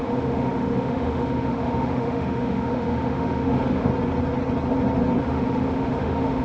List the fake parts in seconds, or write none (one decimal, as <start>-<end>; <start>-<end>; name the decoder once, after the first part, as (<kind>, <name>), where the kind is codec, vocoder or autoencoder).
0.0-3.9 (autoencoder, DAC-VAE); 5.2-6.4